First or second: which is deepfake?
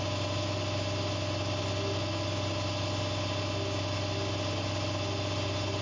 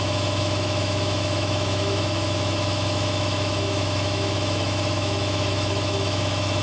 second